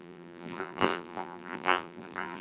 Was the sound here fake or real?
fake